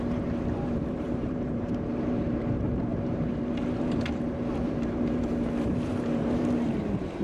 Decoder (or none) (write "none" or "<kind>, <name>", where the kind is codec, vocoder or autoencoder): vocoder, BigVGAN v2